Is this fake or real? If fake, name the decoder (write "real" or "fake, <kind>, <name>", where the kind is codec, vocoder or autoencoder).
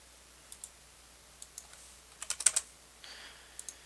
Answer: real